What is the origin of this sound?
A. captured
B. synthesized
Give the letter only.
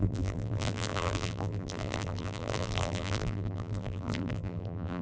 B